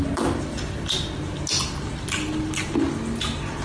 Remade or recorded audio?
recorded